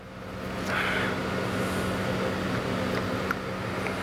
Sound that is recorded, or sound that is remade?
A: recorded